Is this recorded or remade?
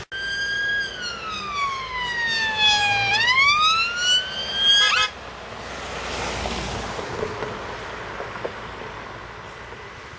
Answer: recorded